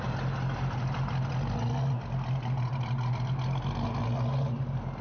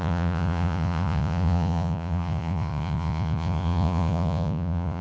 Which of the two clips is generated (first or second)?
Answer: second